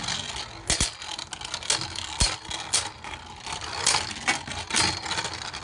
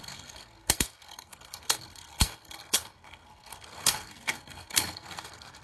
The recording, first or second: first